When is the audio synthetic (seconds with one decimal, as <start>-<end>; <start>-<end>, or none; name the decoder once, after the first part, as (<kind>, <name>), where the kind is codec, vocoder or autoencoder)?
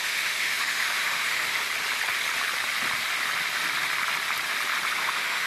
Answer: 0.0-1.6 (autoencoder, DAC-VAE); 4.9-5.5